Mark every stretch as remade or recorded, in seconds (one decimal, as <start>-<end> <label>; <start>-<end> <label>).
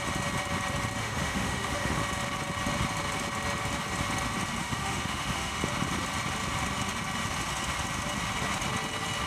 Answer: 0.0-1.0 recorded; 1.0-2.0 remade; 2.0-4.6 recorded; 4.6-5.6 remade; 5.6-9.3 recorded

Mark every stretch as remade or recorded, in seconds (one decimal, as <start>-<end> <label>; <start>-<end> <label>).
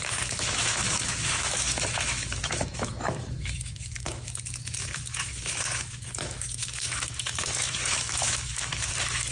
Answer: 0.0-9.3 remade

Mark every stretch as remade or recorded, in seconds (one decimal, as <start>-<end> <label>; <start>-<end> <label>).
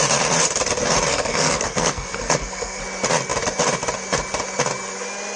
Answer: 0.0-1.1 recorded; 1.1-2.8 remade; 2.8-5.4 recorded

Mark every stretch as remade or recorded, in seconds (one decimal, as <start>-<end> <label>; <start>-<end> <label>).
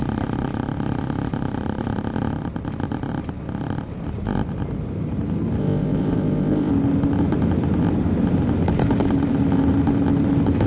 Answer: 0.0-5.6 recorded; 5.6-6.7 remade; 6.7-10.7 recorded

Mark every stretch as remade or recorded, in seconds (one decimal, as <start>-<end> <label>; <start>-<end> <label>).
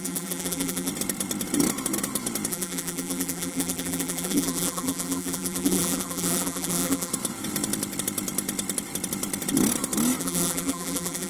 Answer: 0.0-0.9 remade; 0.9-2.5 recorded; 2.5-7.1 remade; 7.1-10.2 recorded; 10.2-11.3 remade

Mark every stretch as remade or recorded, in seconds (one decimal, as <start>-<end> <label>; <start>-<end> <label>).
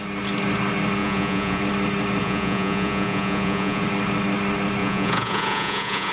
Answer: 0.0-1.0 recorded; 1.0-1.6 remade; 1.6-2.2 recorded; 2.2-3.8 remade; 3.8-4.8 recorded; 4.8-6.1 remade